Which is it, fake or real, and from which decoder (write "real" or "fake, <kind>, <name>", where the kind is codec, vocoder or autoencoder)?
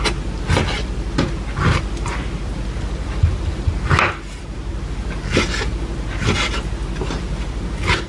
real